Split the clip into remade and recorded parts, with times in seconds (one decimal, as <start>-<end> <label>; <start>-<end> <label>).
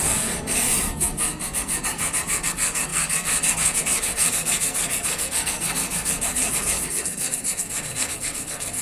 0.0-8.8 remade